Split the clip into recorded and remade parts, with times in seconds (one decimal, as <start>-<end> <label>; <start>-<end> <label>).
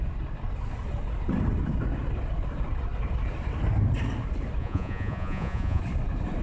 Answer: 0.0-4.6 recorded; 4.6-5.8 remade; 5.8-6.4 recorded